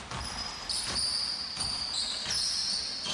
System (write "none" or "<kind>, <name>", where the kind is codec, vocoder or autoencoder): none